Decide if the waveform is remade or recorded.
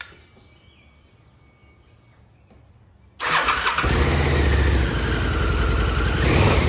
recorded